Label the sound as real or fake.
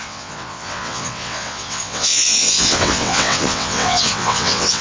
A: fake